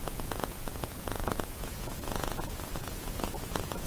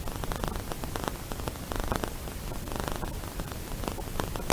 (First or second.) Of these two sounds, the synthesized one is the first